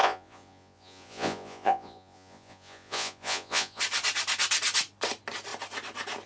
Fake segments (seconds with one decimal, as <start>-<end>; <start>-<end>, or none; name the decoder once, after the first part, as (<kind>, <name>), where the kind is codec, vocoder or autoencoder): 0.0-3.8 (vocoder, Vocos)